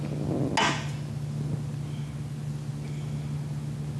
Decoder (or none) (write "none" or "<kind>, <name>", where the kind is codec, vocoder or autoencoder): none